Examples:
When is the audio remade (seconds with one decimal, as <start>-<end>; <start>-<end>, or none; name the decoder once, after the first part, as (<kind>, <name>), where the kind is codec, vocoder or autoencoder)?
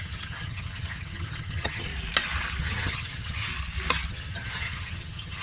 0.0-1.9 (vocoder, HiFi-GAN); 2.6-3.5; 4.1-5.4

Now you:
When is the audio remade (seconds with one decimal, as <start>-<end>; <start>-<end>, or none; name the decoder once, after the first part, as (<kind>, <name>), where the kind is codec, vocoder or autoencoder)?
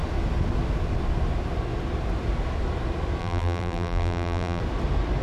3.2-4.6 (vocoder, BigVGAN v2)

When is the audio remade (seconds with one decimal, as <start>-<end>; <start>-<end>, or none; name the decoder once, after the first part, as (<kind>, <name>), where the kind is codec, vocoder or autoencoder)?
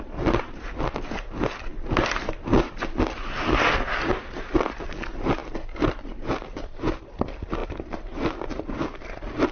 none